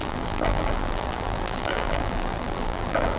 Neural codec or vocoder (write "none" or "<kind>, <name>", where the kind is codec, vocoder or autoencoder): vocoder, BigVGAN v2